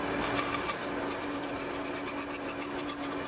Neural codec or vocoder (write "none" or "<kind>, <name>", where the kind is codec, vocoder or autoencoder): none